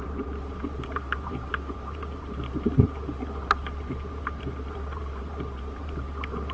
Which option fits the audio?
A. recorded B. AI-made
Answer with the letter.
B